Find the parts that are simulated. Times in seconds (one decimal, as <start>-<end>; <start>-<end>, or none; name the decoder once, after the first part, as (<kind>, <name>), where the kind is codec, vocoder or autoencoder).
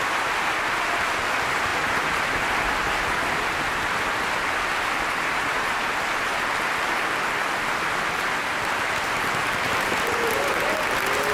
none